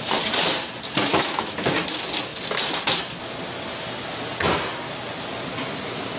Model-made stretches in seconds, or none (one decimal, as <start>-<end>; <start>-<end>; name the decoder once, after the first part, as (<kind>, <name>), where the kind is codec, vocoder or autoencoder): 1.1-1.7 (autoencoder, DAC-VAE)